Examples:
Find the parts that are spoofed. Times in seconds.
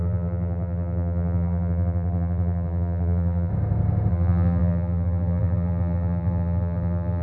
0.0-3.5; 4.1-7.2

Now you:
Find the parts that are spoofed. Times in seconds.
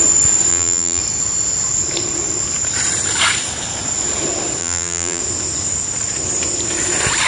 0.5-1.0; 4.6-5.2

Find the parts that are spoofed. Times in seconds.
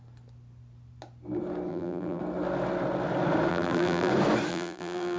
1.7-2.2; 3.5-4.1; 4.5-5.2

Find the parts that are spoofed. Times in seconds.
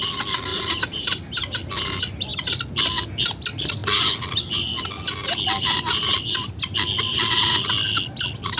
0.5-1.3